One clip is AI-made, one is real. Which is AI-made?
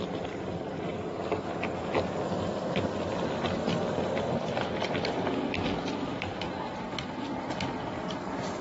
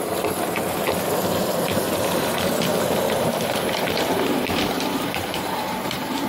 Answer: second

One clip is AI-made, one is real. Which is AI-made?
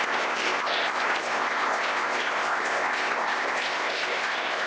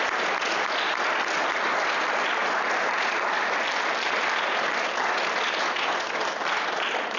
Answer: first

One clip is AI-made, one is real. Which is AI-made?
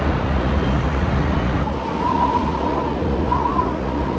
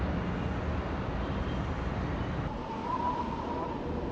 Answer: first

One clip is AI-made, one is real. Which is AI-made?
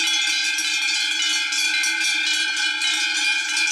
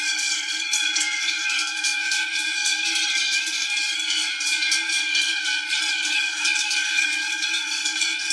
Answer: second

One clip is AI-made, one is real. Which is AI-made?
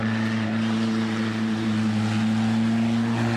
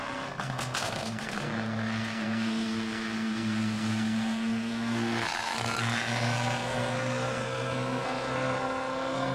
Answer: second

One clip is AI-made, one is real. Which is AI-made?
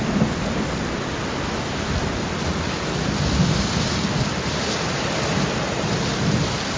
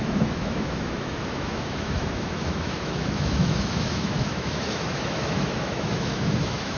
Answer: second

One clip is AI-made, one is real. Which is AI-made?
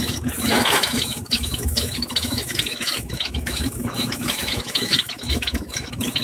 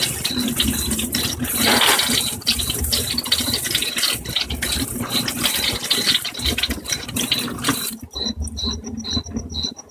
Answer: first